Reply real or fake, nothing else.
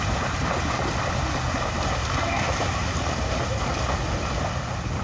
real